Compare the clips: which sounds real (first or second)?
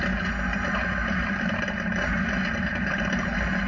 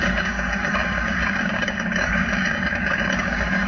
first